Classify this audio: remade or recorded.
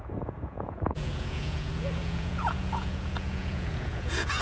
remade